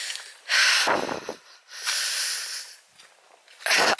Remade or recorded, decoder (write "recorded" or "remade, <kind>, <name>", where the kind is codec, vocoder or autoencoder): recorded